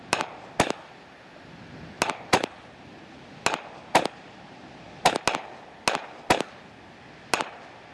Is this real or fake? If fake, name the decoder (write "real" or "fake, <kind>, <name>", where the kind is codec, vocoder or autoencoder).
real